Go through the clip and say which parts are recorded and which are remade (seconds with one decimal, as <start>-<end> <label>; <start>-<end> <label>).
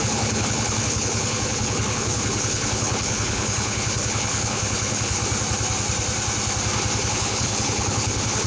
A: 0.0-5.2 remade; 5.2-7.1 recorded; 7.1-8.5 remade